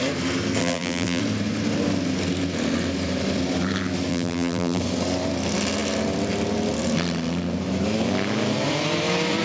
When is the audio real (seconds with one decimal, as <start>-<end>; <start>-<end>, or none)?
0.0-0.6; 1.2-4.1; 4.8-9.4